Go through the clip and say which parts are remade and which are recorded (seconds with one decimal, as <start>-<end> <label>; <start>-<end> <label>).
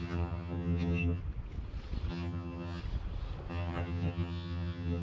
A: 0.0-1.2 remade; 1.2-2.1 recorded; 2.1-2.8 remade; 2.8-3.5 recorded; 3.5-5.0 remade